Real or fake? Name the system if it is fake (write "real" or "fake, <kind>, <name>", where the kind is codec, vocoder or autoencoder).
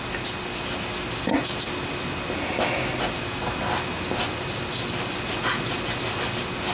real